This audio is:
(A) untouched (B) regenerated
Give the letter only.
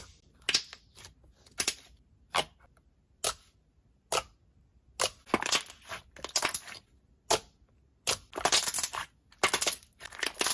A